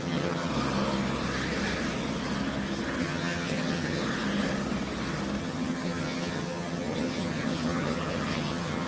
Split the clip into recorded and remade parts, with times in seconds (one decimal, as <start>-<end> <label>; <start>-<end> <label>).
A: 0.0-0.5 remade; 0.5-3.0 recorded; 3.0-4.0 remade; 4.0-5.4 recorded; 5.4-8.9 remade